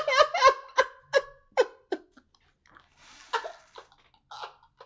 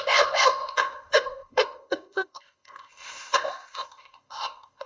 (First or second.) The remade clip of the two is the second